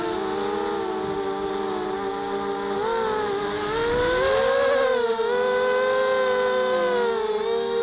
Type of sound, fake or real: real